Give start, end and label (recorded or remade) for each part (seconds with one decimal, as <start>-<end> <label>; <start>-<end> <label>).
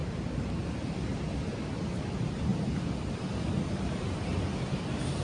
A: 0.0-2.0 remade; 2.0-2.5 recorded; 2.5-3.7 remade; 3.7-5.2 recorded